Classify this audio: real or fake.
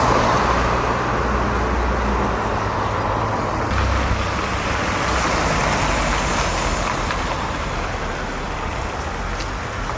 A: real